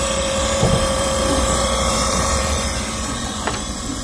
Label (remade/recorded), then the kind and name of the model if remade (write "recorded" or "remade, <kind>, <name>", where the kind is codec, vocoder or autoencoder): remade, vocoder, Vocos